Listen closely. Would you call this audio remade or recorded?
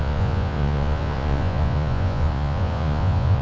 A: remade